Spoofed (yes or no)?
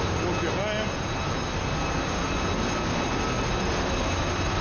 no